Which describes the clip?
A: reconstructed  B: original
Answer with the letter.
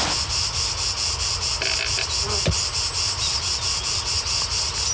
B